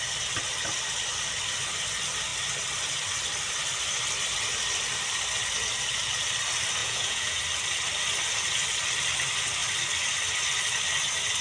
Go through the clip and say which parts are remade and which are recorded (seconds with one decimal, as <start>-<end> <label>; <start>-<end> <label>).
0.0-6.8 recorded; 6.8-7.4 remade; 7.4-11.4 recorded